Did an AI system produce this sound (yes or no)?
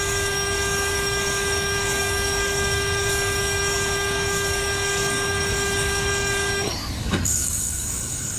yes